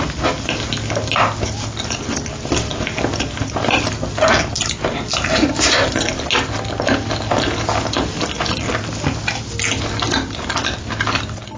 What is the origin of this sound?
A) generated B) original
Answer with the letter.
B